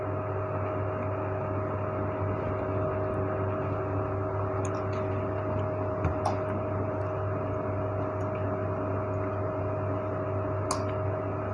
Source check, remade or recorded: recorded